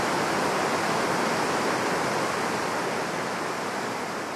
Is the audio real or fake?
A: real